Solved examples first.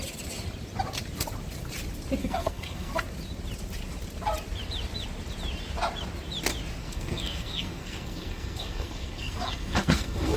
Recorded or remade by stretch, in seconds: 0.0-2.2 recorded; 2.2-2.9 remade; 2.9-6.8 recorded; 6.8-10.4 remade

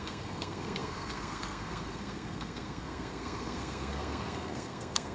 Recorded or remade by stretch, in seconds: 0.0-5.1 remade

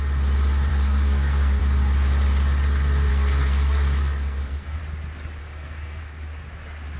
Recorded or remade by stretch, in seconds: 0.0-0.7 recorded; 0.7-1.6 remade; 1.6-3.1 recorded; 3.1-4.8 remade; 4.8-5.4 recorded; 5.4-6.0 remade; 6.0-7.0 recorded